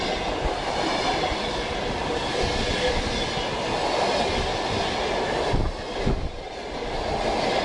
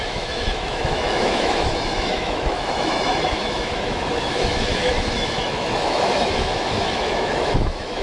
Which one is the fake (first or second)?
second